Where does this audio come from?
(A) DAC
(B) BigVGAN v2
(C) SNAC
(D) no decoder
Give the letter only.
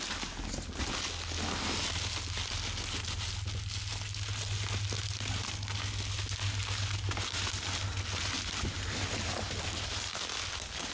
D